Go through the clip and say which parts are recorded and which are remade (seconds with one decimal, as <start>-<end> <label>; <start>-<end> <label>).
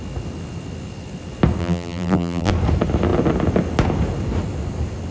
0.0-1.6 recorded; 1.6-2.5 remade; 2.5-5.1 recorded